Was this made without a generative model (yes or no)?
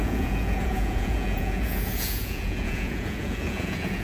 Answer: no